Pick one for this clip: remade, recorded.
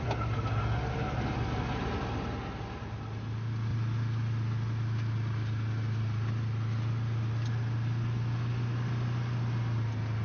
recorded